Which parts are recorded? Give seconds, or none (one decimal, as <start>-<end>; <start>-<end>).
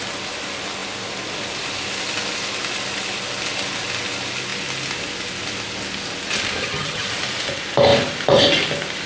0.0-6.6; 7.1-9.1